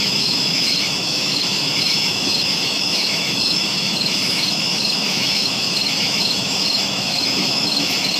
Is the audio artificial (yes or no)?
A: yes